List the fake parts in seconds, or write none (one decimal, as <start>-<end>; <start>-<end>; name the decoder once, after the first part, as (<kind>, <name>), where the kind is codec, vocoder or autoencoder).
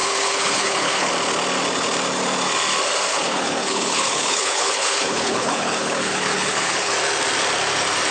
0.0-1.1 (codec, HILCodec); 3.1-6.9